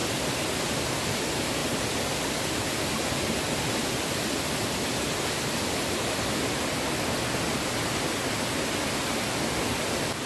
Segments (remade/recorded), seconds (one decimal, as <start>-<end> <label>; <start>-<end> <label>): 0.0-10.3 recorded